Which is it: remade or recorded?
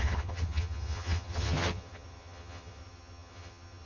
remade